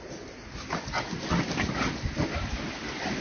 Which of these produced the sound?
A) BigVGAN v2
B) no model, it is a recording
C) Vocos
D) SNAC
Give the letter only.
B